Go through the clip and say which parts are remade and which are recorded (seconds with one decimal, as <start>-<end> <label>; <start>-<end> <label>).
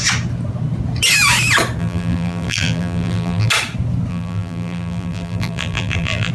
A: 0.0-1.8 recorded; 1.8-3.5 remade; 3.5-4.1 recorded; 4.1-6.3 remade